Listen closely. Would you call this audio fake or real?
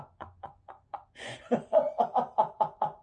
fake